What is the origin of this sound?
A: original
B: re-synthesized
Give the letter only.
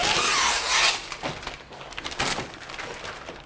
A